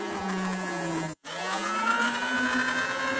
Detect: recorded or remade remade